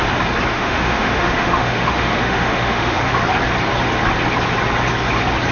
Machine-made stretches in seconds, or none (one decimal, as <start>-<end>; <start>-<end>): 0.5-3.1